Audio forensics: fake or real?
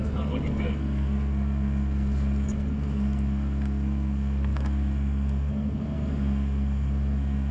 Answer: fake